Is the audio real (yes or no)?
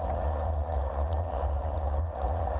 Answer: no